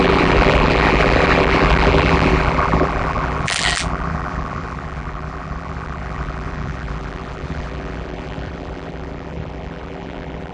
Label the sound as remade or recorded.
remade